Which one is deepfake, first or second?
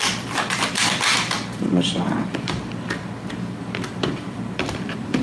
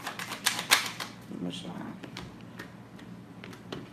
first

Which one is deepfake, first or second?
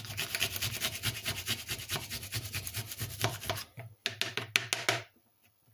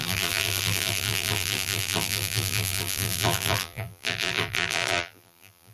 second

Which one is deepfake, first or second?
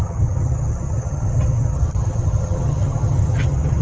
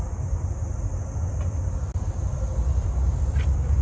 first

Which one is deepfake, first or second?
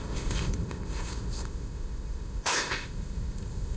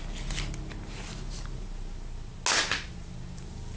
first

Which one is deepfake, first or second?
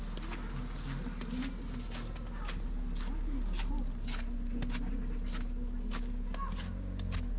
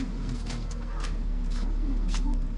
second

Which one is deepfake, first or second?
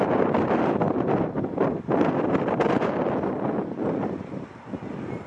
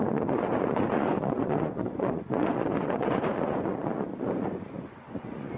second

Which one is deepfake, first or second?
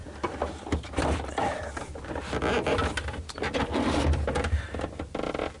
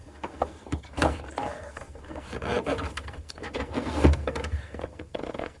second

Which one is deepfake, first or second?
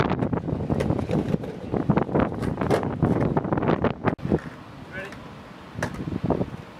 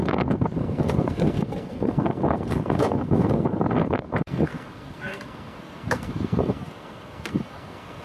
second